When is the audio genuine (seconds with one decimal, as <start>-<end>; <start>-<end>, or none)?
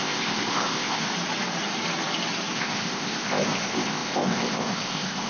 1.1-2.5